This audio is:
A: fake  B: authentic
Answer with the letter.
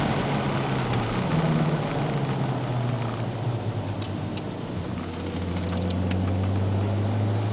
B